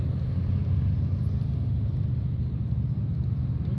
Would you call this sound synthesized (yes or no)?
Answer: no